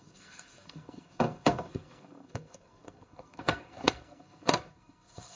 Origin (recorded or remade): remade